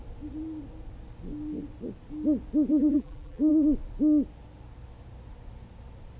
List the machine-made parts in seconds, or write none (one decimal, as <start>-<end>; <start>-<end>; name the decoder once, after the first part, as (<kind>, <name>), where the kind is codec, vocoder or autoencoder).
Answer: 2.7-3.5 (vocoder, BigVGAN v2)